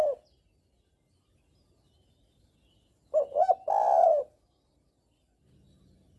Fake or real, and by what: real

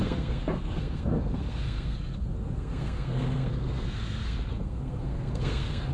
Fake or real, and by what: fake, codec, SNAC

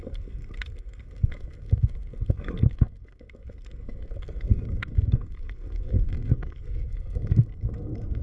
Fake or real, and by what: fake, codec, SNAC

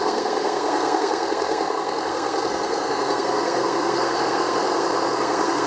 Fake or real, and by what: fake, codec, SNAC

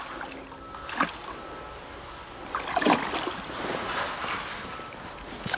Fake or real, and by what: real